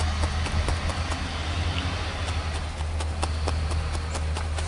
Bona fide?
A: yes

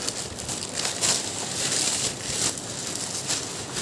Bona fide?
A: yes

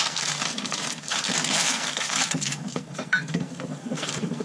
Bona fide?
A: no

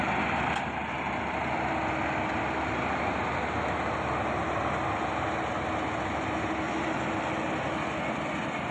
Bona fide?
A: yes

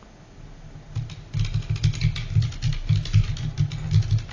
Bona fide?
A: yes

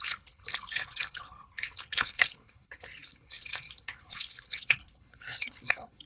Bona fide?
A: no